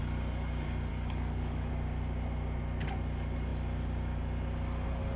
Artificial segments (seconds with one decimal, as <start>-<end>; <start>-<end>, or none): 0.9-1.7